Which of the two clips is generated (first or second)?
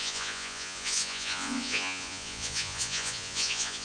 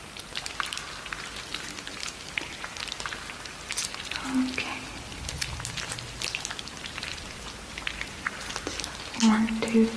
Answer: first